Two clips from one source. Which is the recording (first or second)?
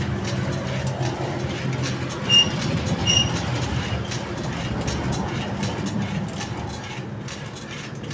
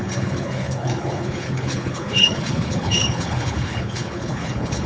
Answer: first